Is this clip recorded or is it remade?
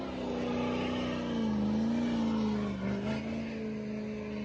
recorded